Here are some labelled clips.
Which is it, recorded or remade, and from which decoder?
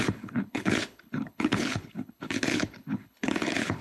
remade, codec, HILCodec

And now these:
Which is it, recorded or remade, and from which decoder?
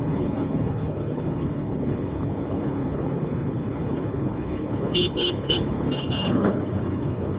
remade, codec, HILCodec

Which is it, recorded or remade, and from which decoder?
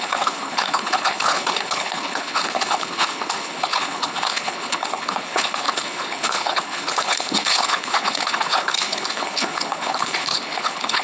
remade, codec, HILCodec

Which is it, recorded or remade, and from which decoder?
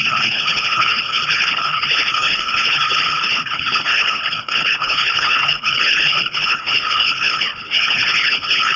remade, codec, HILCodec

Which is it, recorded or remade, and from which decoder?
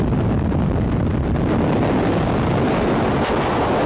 recorded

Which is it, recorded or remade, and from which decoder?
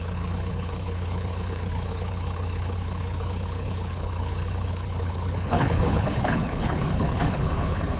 remade, codec, HILCodec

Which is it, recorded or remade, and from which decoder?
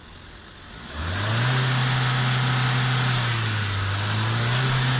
recorded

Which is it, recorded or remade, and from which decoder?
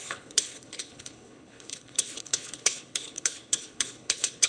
remade, codec, HILCodec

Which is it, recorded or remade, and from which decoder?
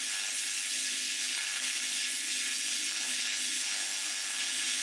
remade, codec, HILCodec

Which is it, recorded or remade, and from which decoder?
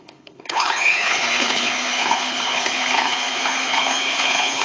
remade, codec, HILCodec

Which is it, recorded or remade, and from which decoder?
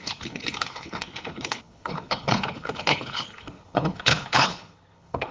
remade, codec, HILCodec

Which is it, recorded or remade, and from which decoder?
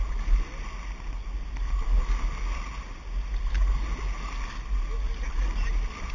recorded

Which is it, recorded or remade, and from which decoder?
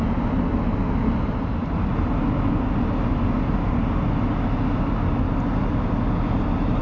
recorded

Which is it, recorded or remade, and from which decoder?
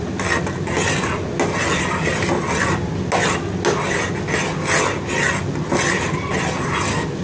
recorded